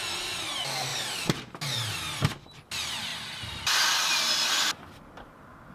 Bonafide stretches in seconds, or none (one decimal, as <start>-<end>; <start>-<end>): 0.0-0.9; 1.6-5.7